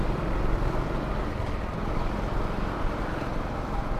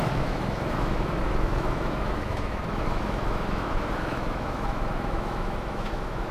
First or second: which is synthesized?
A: second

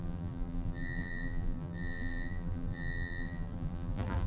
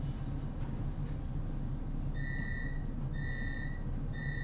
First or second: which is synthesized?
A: first